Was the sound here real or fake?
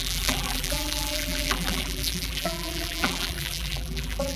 fake